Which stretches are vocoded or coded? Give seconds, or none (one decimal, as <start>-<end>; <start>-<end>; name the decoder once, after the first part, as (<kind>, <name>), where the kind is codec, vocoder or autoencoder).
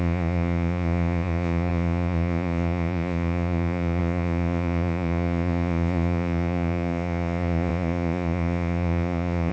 0.0-9.5 (vocoder, Vocos)